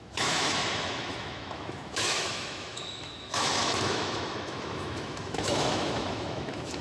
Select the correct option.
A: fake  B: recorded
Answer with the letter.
A